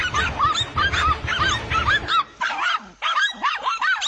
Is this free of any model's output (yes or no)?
yes